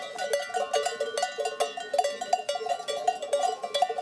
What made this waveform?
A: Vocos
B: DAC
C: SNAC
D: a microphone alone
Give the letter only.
D